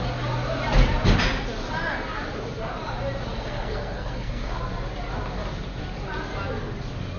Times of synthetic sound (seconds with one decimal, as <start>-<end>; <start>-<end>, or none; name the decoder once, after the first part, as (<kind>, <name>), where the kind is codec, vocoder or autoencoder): 3.3-4.6 (codec, SNAC)